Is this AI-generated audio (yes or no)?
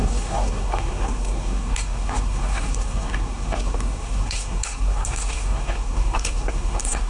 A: yes